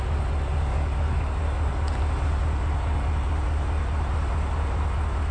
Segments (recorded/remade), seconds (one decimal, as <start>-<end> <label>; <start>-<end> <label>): 0.0-0.7 recorded; 0.7-1.4 remade; 1.4-5.3 recorded